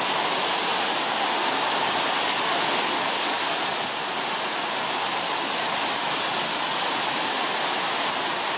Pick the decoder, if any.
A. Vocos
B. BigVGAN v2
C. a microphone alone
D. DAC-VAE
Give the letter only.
C